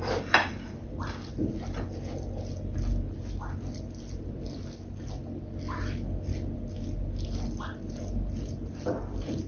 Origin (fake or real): real